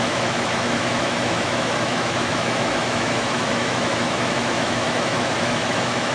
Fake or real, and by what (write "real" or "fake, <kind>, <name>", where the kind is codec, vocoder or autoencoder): fake, autoencoder, DAC-VAE